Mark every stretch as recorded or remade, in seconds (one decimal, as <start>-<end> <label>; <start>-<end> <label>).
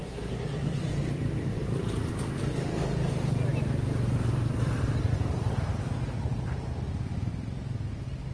0.0-0.8 remade; 0.8-8.3 recorded